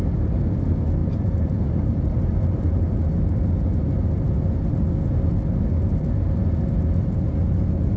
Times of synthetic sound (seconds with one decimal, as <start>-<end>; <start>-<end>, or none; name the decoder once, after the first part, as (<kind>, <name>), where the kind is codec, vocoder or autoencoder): 1.0-2.8 (vocoder, BigVGAN v2)